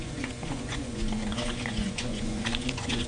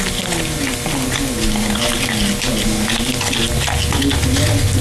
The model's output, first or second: first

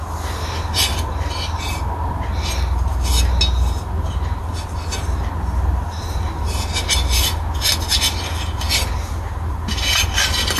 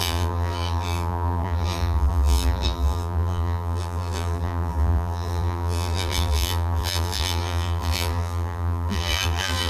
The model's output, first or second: second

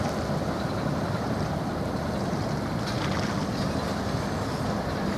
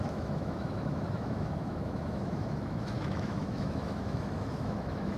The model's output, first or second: second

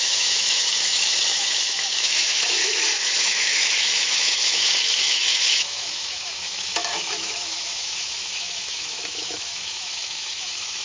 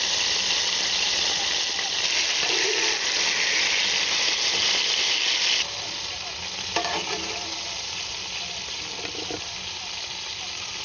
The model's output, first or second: first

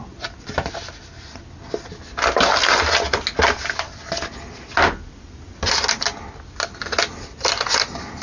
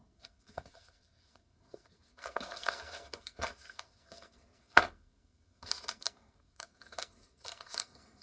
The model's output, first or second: second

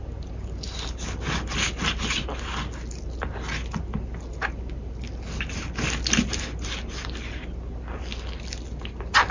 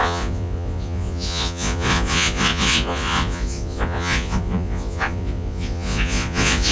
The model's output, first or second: second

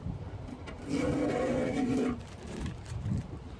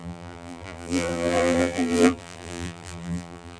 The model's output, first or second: second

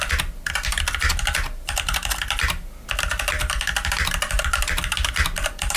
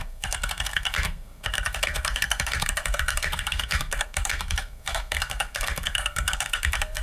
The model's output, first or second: second